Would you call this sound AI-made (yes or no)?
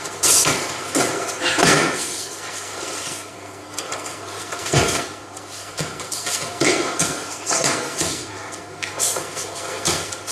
yes